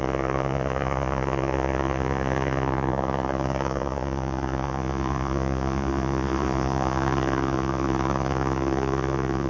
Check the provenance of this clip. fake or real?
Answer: fake